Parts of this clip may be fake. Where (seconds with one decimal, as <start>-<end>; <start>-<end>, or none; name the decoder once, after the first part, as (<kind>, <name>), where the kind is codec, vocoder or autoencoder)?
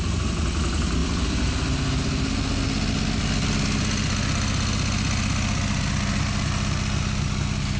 none